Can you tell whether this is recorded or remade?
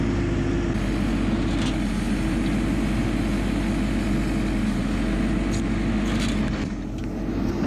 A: recorded